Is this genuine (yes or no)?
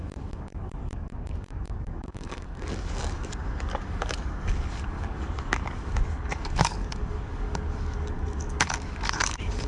no